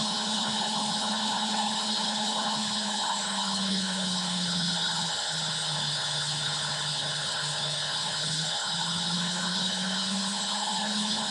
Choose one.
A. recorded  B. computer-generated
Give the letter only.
B